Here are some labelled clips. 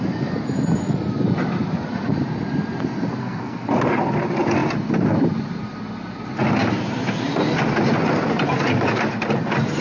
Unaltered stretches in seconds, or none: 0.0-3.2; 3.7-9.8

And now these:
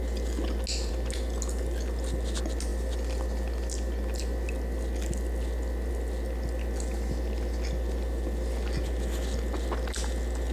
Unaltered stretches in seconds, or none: 0.0-10.5

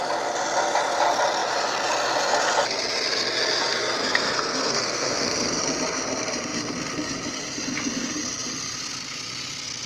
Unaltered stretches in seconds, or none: 0.0-4.0; 5.6-9.9

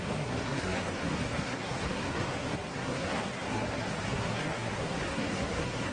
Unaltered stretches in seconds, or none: none

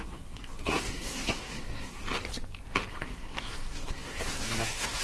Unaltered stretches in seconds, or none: 2.0-2.9

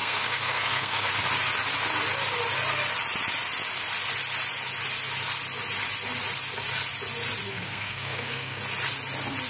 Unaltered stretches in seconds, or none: 1.1-7.5; 8.6-9.5